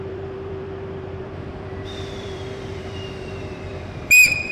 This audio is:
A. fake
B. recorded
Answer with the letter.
A